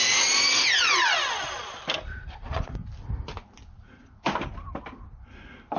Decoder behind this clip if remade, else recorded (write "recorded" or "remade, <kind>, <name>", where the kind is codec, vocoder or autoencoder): recorded